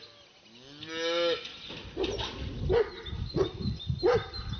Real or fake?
real